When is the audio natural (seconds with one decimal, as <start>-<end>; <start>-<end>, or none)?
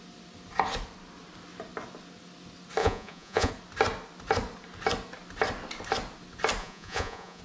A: 0.0-2.8; 3.5-6.6